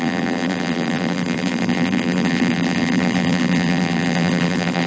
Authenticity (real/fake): fake